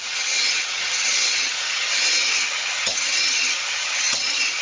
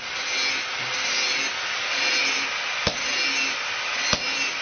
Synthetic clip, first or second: first